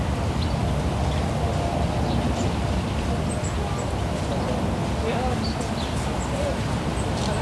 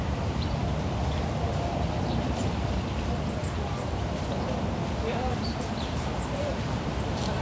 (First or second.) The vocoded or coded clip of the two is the second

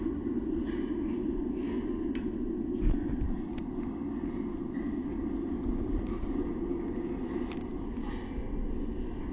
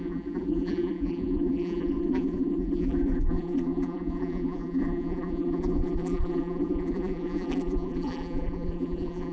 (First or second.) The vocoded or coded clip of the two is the second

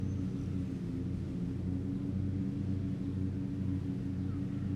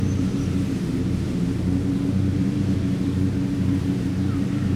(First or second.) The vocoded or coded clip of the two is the second